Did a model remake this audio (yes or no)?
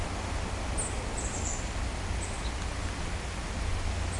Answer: no